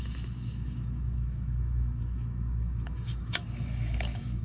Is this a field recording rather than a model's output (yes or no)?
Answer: no